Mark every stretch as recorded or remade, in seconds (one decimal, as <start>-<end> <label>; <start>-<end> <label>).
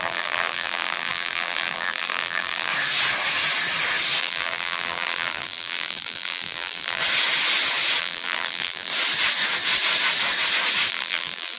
0.0-2.7 remade; 2.7-4.2 recorded; 4.2-7.0 remade; 7.0-8.0 recorded; 8.0-8.9 remade; 8.9-10.9 recorded; 10.9-11.6 remade